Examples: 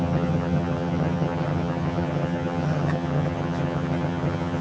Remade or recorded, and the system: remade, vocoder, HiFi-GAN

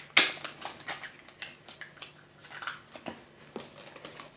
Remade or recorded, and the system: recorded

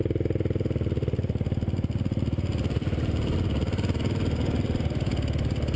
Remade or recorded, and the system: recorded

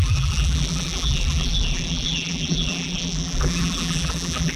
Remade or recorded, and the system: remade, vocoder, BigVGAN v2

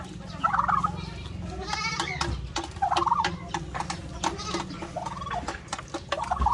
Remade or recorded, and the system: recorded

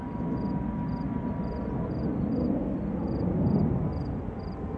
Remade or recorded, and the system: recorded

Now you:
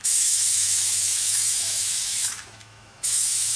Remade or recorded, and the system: remade, autoencoder, DAC-VAE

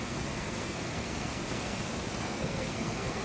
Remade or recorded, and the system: remade, codec, SNAC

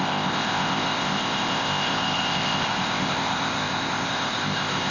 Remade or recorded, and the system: remade, codec, ZipCodec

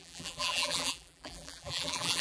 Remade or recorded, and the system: remade, vocoder, BigVGAN v2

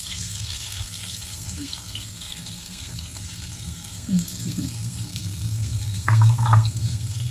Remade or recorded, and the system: remade, codec, SNAC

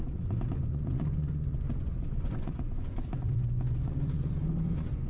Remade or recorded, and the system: remade, vocoder, Vocos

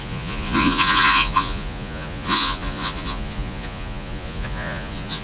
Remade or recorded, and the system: remade, vocoder, Vocos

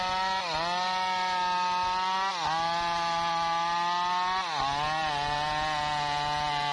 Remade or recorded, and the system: recorded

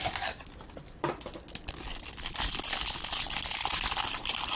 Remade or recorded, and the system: recorded